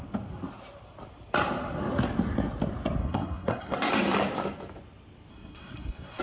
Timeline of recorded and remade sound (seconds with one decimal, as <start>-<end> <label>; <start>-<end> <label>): 0.0-3.0 recorded; 3.0-3.9 remade; 3.9-5.3 recorded; 5.3-6.2 remade